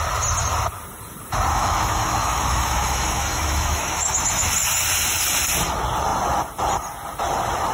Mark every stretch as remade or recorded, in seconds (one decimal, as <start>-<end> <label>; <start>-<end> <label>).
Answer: 0.0-1.5 recorded; 1.5-4.5 remade; 4.5-7.7 recorded